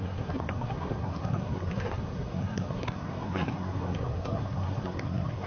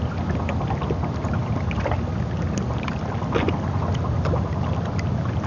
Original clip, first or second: second